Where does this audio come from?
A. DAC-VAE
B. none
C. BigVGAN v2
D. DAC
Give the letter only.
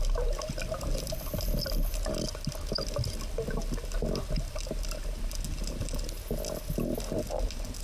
B